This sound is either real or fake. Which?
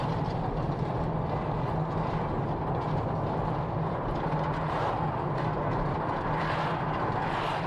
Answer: fake